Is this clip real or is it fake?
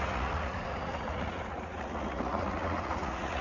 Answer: fake